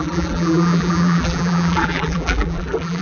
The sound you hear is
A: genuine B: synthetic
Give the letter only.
B